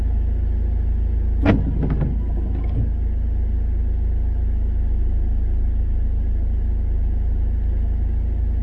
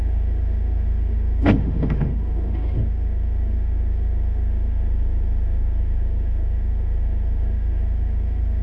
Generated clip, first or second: second